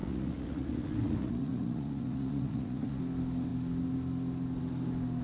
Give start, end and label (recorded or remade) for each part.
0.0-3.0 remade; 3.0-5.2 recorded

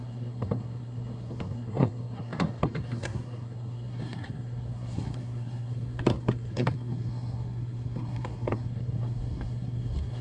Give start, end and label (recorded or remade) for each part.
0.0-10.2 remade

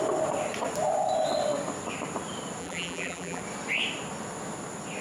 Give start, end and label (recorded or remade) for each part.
0.0-2.6 recorded; 2.6-3.4 remade; 3.4-5.0 recorded

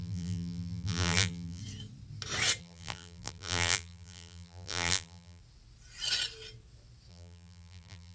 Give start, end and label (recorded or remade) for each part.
0.0-1.6 remade; 1.6-2.6 recorded; 2.6-5.4 remade; 5.4-7.1 recorded; 7.1-8.1 remade

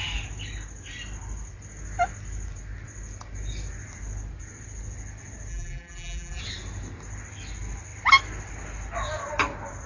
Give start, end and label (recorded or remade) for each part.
0.0-5.5 recorded; 5.5-6.4 remade; 6.4-9.9 recorded

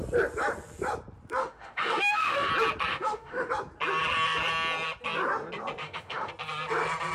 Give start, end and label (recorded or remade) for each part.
0.0-1.4 recorded; 1.4-2.5 remade; 2.5-2.9 recorded; 2.9-3.5 remade; 3.5-5.8 recorded; 5.8-6.3 remade; 6.3-7.1 recorded

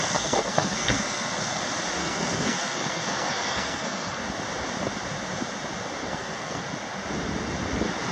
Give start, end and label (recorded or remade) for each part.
0.0-1.6 remade; 1.6-2.0 recorded; 2.0-4.2 remade; 4.2-6.0 recorded; 6.0-6.6 remade; 6.6-8.1 recorded

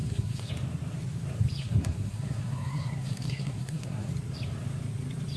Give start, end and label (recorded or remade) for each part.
0.0-0.5 remade; 0.5-1.6 recorded; 1.6-4.1 remade; 4.1-5.4 recorded